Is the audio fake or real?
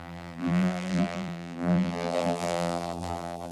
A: fake